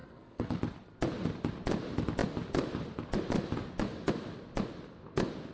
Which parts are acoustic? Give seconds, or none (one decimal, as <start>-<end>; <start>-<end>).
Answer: 0.6-5.5